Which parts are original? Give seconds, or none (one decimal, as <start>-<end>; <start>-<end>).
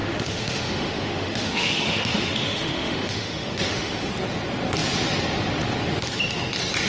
4.1-6.9